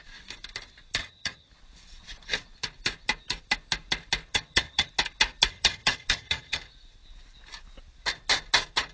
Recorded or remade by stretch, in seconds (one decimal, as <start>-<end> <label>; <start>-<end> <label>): 0.0-1.0 recorded; 1.0-1.5 remade; 1.5-4.3 recorded; 4.3-4.9 remade; 4.9-5.5 recorded; 5.5-6.6 remade; 6.6-8.9 recorded